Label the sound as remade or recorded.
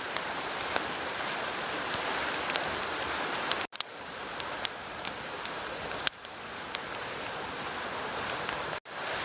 recorded